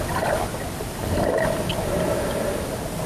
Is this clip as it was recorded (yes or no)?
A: yes